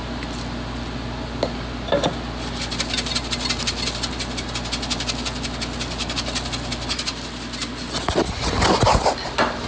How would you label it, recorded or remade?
recorded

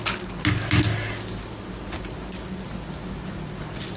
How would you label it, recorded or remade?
recorded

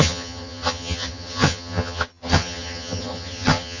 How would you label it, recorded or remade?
remade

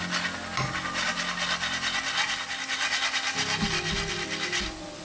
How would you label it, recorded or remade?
recorded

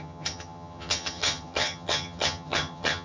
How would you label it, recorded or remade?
remade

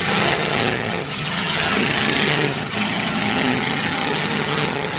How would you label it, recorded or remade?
remade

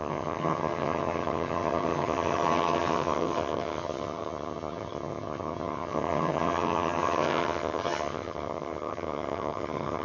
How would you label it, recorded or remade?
remade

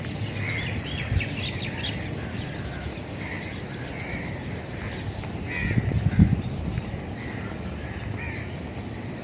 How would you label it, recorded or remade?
recorded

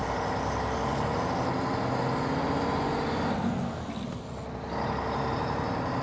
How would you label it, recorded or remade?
recorded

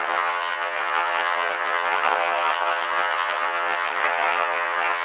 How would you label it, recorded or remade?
remade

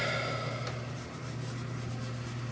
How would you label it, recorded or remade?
recorded